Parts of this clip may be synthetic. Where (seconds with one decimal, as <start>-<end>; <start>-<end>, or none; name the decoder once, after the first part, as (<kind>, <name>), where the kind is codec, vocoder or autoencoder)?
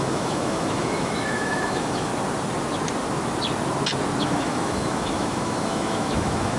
0.0-2.1 (autoencoder, DAC-VAE); 4.2-6.6